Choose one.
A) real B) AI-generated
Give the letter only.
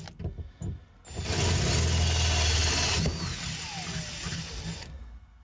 A